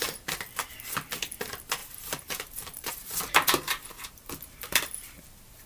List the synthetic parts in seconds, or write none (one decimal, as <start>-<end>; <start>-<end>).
1.8-5.2